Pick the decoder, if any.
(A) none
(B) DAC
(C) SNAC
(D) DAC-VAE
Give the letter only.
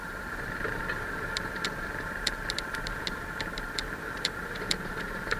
A